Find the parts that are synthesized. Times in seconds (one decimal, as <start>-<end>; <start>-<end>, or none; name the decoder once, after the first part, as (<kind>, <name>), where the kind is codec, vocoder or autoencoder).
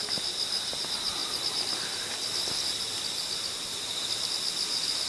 none